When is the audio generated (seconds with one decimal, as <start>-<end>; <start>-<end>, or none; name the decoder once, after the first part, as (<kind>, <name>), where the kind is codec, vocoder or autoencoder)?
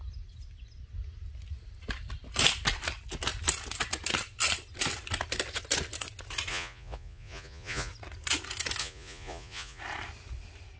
6.5-7.9 (vocoder, Vocos); 8.8-9.8